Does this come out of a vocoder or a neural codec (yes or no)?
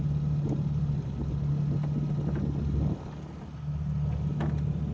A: no